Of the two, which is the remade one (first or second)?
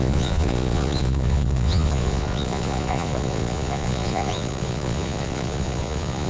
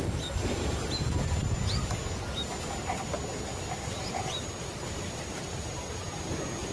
first